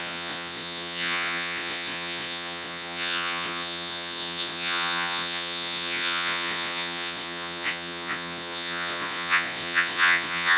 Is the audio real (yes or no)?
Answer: no